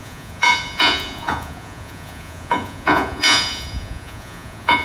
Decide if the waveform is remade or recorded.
remade